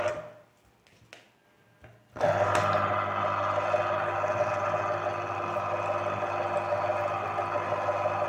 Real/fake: real